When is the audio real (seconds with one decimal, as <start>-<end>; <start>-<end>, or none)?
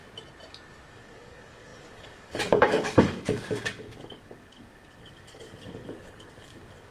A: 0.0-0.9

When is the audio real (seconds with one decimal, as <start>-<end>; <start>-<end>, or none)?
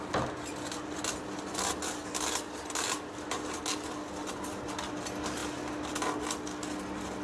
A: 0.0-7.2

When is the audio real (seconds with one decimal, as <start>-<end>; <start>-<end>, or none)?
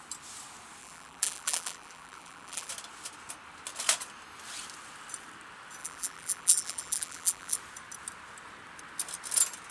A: 0.0-0.8; 2.7-5.8; 7.6-9.7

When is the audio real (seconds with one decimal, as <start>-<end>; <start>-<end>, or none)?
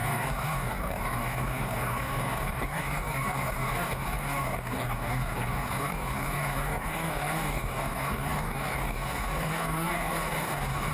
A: none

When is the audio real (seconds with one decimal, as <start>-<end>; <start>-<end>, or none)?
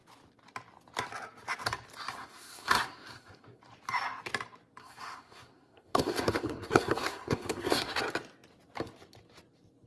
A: 0.0-2.2; 3.6-4.8; 8.0-9.9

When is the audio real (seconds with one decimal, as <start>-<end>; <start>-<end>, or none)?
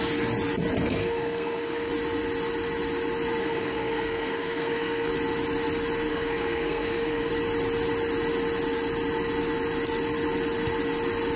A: 0.0-1.0; 1.9-3.4; 5.1-6.1; 7.3-11.4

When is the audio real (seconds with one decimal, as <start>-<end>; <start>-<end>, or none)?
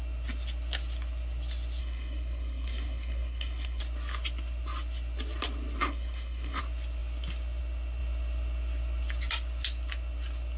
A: 0.0-1.8; 3.8-5.8; 6.6-10.6